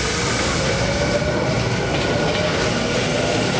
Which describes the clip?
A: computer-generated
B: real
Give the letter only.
B